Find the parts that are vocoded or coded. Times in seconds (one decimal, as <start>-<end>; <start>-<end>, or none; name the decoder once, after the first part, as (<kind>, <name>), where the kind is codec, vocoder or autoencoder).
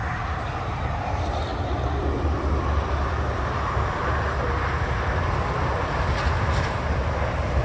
none